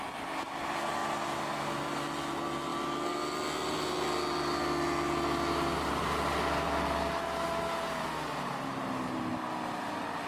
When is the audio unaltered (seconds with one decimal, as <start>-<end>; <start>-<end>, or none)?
0.0-10.3